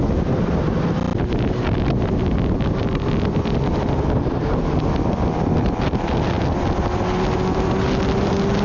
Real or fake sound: real